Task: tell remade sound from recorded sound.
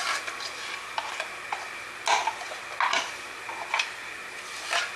recorded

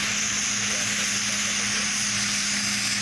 recorded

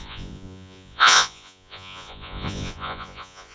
remade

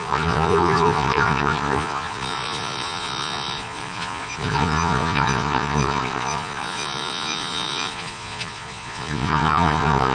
remade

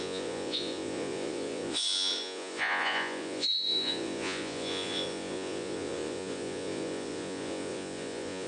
remade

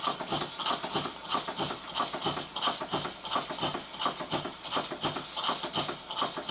recorded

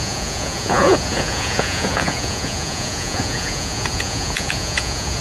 remade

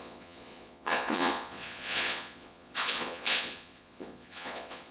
remade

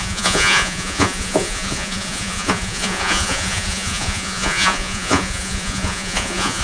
remade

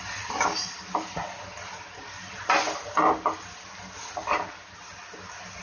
recorded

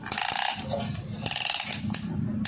recorded